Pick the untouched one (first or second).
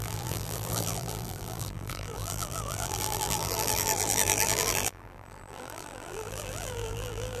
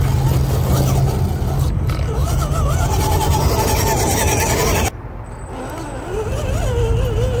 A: second